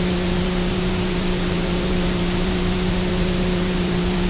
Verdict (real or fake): fake